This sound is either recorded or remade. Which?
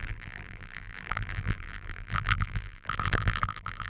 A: remade